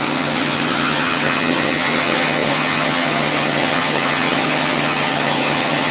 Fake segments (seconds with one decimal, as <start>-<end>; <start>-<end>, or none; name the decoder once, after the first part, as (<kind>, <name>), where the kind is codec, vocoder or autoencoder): 0.0-5.9 (vocoder, HiFi-GAN)